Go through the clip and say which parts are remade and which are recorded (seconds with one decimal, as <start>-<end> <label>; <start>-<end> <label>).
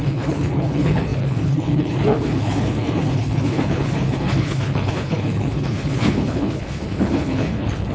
0.0-7.9 remade